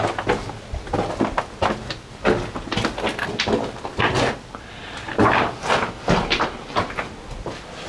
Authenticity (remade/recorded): recorded